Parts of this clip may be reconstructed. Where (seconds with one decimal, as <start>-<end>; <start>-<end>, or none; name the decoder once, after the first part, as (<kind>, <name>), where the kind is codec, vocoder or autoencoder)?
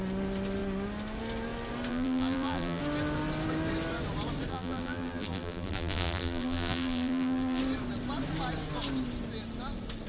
1.9-2.8 (vocoder, BigVGAN v2); 4.5-7.6